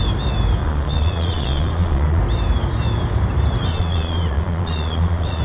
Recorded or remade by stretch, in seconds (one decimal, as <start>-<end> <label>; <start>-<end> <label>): 0.0-0.6 recorded; 0.6-2.2 remade; 2.2-3.7 recorded; 3.7-5.4 remade